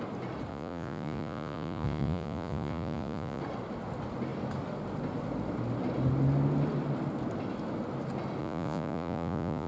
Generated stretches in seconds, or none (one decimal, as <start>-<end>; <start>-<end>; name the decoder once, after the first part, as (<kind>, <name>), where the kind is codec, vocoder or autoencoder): 0.5-3.4 (vocoder, Vocos); 8.4-9.7